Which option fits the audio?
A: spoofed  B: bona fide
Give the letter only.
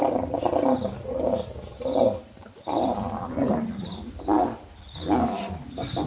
B